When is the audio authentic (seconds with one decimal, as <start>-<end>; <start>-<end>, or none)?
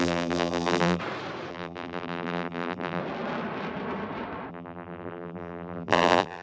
1.0-1.5; 3.0-4.5